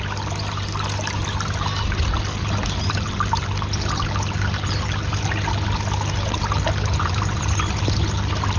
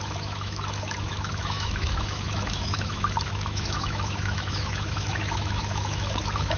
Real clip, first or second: first